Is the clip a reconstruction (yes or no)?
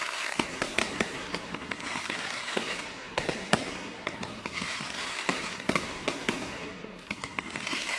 yes